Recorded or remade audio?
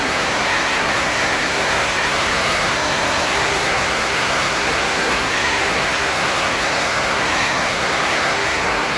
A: remade